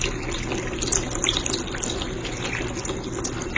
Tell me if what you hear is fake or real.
real